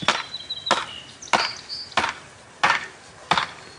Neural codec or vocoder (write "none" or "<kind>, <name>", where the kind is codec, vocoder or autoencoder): none